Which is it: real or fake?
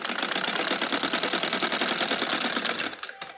real